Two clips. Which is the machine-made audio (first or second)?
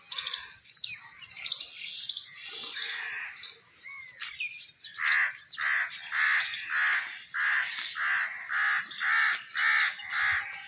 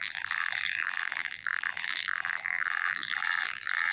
second